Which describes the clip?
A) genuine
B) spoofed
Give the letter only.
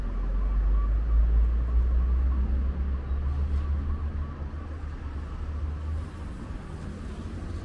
A